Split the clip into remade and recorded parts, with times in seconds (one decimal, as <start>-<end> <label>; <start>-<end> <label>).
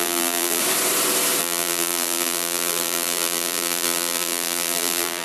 0.0-0.6 remade; 0.6-1.4 recorded; 1.4-5.2 remade